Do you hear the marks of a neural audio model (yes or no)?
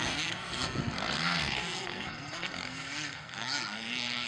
yes